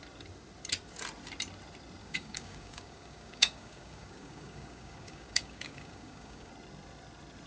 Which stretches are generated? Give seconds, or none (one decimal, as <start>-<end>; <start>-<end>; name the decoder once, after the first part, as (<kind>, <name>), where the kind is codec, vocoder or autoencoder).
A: 2.0-6.5 (codec, DAC)